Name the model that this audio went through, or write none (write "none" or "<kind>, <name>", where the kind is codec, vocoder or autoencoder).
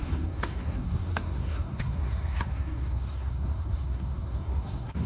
codec, SNAC